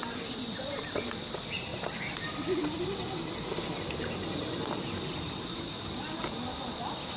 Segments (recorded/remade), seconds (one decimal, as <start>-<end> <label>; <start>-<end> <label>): 0.0-0.8 remade; 0.8-1.7 recorded; 1.7-2.6 remade; 2.6-4.2 recorded; 4.2-6.0 remade; 6.0-7.2 recorded